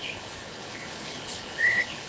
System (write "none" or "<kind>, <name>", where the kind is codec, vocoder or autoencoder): codec, HILCodec